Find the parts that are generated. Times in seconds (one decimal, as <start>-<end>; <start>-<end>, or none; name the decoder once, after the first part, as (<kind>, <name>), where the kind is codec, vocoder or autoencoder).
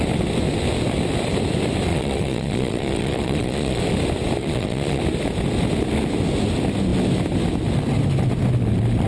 1.9-3.8 (vocoder, Vocos); 4.4-5.0